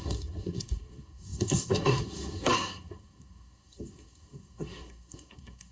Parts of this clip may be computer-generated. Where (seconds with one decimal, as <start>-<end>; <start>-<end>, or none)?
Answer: 0.0-5.7